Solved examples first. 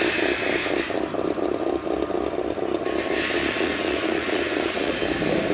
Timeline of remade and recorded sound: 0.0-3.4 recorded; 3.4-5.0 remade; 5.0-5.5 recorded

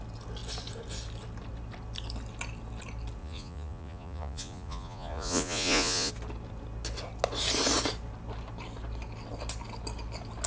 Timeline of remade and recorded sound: 0.0-3.2 recorded; 3.2-6.1 remade; 6.1-10.5 recorded

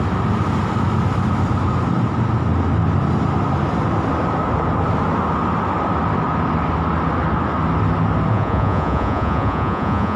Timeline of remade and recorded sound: 0.0-8.3 recorded; 8.3-10.2 remade

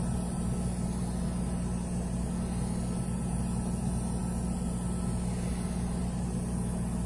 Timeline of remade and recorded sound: 0.0-7.1 recorded

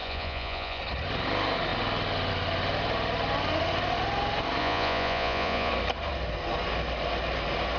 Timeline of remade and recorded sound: 0.0-0.8 remade; 0.8-4.6 recorded; 4.6-5.7 remade; 5.7-7.8 recorded